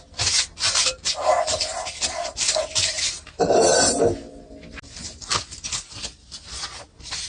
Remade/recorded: recorded